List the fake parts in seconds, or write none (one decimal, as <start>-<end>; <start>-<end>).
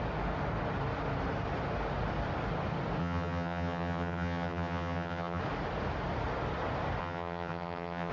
3.0-5.4; 7.0-8.1